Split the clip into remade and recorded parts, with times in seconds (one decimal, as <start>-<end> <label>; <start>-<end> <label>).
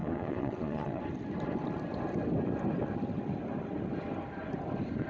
0.0-1.0 remade; 1.0-5.1 recorded